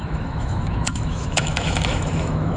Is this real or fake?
fake